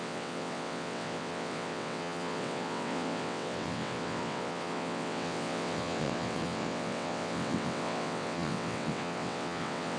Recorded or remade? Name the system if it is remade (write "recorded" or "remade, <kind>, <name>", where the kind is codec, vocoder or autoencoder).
remade, vocoder, WaveNeXt